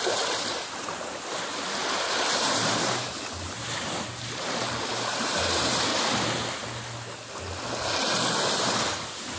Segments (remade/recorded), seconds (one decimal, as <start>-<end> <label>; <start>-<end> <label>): 0.0-5.9 remade; 5.9-8.9 recorded; 8.9-9.4 remade

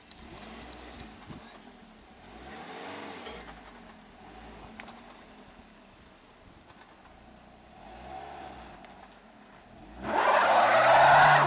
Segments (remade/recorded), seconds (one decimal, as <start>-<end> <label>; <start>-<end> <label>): 0.0-11.5 recorded